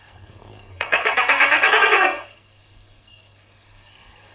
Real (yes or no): no